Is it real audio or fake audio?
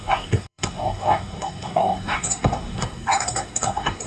fake